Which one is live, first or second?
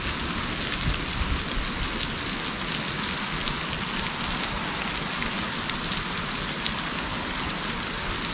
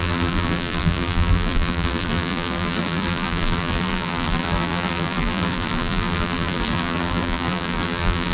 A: first